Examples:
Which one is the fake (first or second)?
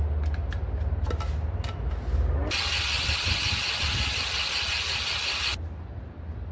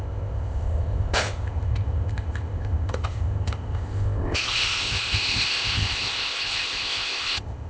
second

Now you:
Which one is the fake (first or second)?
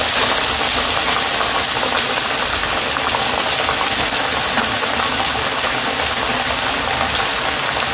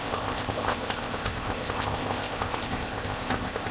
second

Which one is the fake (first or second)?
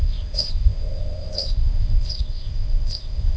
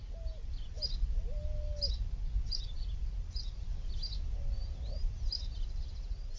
first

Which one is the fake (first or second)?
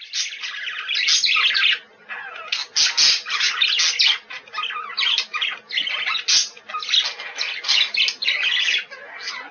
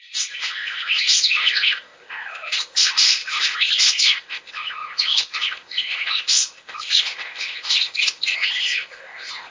second